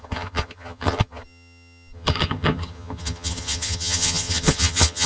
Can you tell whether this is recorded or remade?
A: remade